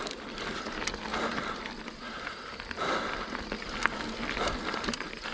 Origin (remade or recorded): recorded